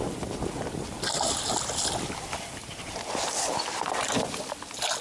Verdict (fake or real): real